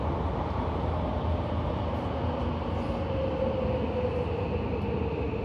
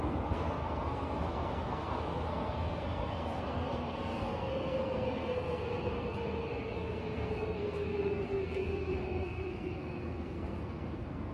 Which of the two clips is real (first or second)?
first